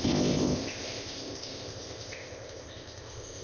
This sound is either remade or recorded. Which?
remade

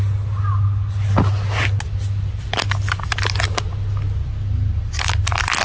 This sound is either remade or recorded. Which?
recorded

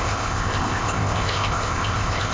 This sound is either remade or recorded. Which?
remade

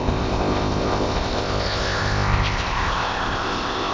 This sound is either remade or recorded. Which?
remade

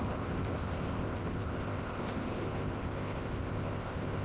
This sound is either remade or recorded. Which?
remade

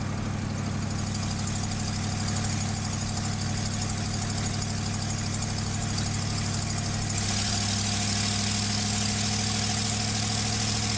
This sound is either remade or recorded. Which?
recorded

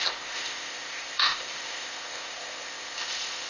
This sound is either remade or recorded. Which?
remade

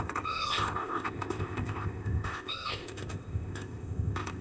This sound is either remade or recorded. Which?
remade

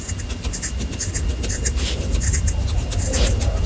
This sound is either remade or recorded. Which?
recorded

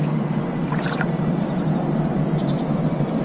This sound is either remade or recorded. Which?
recorded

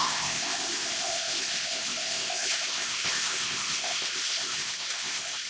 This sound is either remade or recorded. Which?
remade